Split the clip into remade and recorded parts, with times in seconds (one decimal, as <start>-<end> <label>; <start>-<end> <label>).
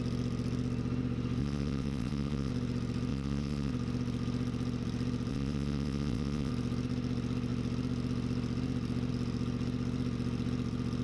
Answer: 0.0-1.4 recorded; 1.4-2.5 remade; 2.5-3.1 recorded; 3.1-3.7 remade; 3.7-5.3 recorded; 5.3-6.5 remade; 6.5-11.0 recorded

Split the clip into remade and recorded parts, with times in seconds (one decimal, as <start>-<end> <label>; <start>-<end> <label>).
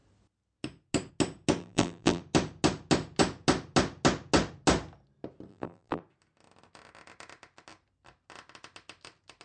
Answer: 0.0-1.6 recorded; 1.6-2.2 remade; 2.2-5.5 recorded; 5.5-6.0 remade; 6.0-9.4 recorded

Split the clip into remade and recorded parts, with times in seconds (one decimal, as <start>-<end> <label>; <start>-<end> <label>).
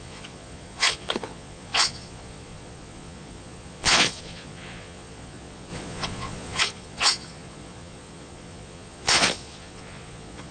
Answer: 0.0-10.5 remade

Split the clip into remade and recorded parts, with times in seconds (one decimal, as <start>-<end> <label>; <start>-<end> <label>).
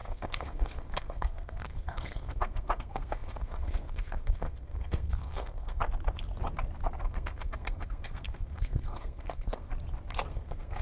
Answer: 0.0-5.8 remade; 5.8-7.0 recorded; 7.0-9.7 remade; 9.7-10.3 recorded; 10.3-10.8 remade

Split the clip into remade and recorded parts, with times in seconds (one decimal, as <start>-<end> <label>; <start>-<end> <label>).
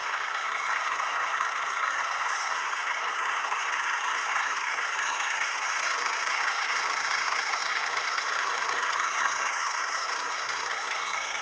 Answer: 0.0-11.4 remade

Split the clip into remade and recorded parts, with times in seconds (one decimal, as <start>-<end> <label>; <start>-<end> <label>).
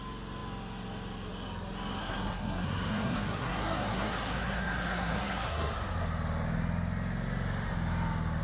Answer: 0.0-2.0 recorded; 2.0-5.7 remade; 5.7-8.4 recorded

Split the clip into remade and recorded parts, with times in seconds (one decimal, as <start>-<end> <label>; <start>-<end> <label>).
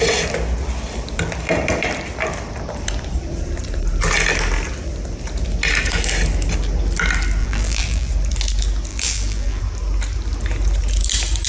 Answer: 0.0-7.4 recorded; 7.4-8.1 remade; 8.1-8.9 recorded; 8.9-9.6 remade; 9.6-11.5 recorded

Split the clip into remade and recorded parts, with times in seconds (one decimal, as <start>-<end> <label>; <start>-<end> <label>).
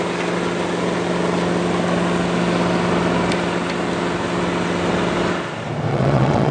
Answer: 0.0-5.9 recorded; 5.9-6.5 remade